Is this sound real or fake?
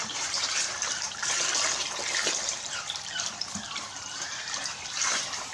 fake